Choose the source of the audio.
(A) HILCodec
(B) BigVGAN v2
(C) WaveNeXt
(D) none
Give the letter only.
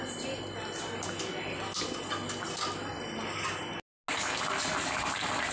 D